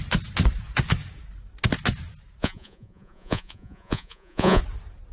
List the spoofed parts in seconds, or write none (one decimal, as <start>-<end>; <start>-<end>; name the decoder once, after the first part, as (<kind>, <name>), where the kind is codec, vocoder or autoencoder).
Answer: 2.4-4.6 (vocoder, Vocos)